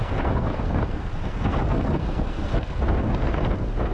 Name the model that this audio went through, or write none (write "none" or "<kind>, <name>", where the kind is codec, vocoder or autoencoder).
codec, SNAC